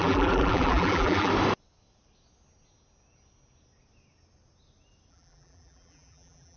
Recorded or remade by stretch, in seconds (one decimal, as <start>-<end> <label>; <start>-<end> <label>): 0.0-1.3 remade; 1.3-5.1 recorded; 5.1-6.6 remade